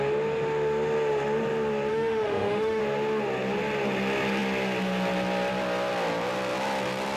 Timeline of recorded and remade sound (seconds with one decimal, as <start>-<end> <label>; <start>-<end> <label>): 0.0-1.9 recorded; 1.9-2.8 remade; 2.8-7.2 recorded